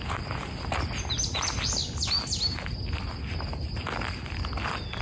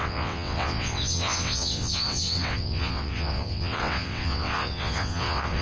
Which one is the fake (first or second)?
second